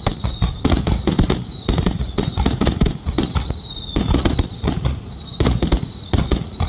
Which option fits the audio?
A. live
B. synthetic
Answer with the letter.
B